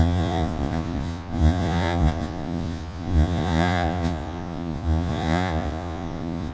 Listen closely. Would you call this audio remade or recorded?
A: remade